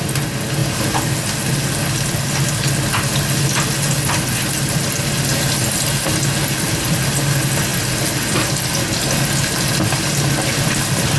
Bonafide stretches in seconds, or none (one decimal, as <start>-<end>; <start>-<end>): 0.0-11.2